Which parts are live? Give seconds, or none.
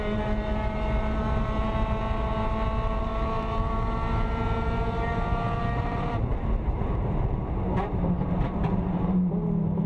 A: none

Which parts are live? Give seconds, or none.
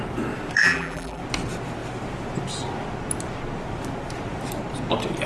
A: 0.0-0.6; 1.2-5.3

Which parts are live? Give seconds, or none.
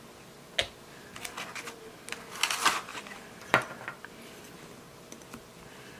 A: 0.0-2.9; 3.8-6.0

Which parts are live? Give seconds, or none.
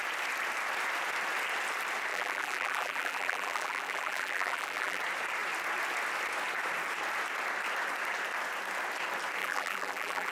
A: 0.0-2.1; 5.0-9.4